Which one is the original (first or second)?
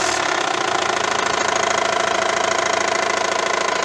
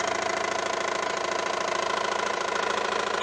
second